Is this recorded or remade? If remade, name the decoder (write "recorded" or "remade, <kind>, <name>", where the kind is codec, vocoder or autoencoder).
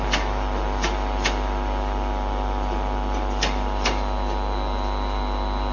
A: recorded